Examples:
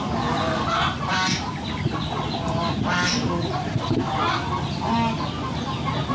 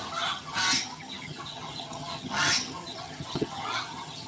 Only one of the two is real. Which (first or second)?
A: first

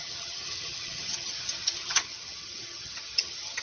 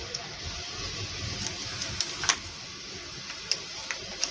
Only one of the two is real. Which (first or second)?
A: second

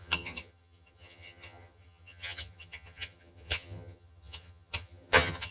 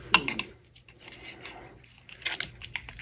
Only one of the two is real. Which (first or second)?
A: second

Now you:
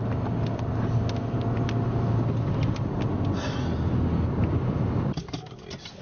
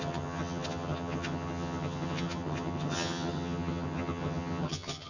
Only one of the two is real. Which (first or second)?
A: first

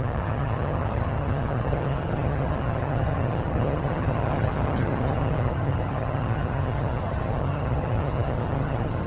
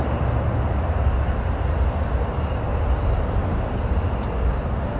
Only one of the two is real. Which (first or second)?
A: second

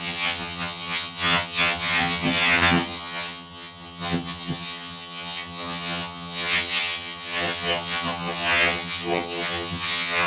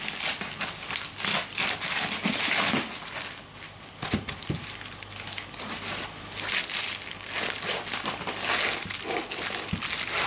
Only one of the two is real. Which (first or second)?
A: second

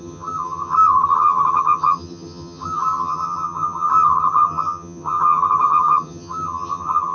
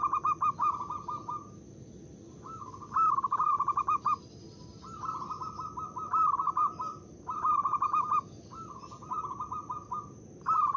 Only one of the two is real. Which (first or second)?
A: second